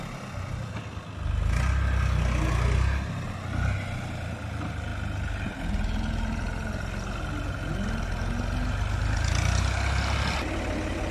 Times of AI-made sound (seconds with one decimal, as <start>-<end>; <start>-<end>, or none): none